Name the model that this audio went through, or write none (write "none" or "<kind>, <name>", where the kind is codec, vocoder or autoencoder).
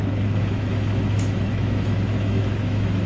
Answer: autoencoder, DAC-VAE